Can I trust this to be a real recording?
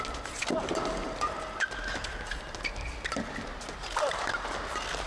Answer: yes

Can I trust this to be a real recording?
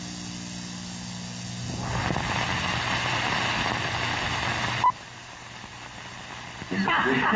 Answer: yes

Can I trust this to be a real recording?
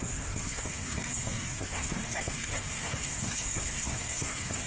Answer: no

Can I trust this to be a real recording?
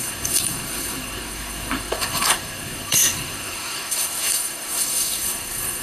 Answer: no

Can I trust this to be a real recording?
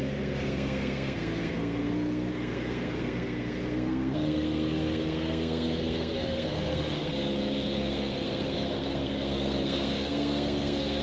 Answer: no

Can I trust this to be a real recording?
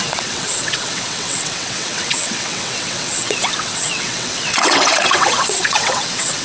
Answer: no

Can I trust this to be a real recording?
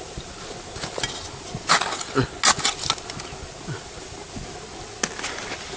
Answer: yes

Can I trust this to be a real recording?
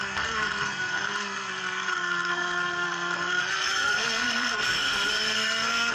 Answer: no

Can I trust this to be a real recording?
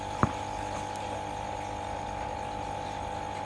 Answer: yes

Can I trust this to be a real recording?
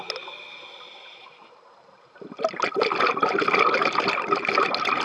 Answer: yes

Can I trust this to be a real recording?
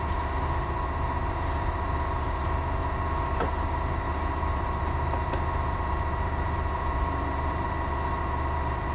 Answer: no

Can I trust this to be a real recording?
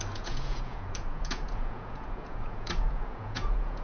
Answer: no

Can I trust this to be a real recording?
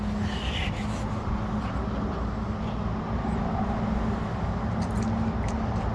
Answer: yes